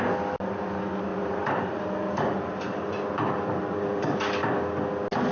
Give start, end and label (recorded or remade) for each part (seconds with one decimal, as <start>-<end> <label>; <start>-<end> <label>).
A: 0.0-1.1 recorded; 1.1-4.2 remade; 4.2-5.3 recorded